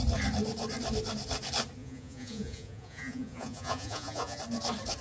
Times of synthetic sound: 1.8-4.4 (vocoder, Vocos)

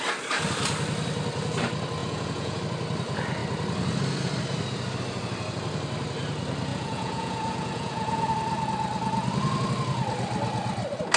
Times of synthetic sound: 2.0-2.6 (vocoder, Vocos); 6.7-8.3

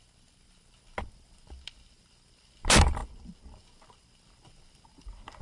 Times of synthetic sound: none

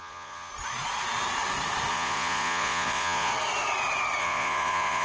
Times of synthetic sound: 0.0-0.5 (vocoder, Vocos); 1.9-3.3; 4.2-5.0

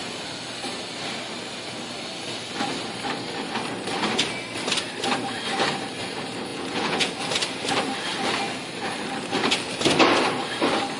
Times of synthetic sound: 6.5-7.1 (vocoder, Vocos)